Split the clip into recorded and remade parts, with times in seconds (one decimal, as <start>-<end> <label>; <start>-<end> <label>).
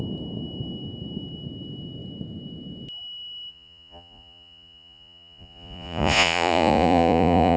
0.0-3.5 recorded; 3.5-7.6 remade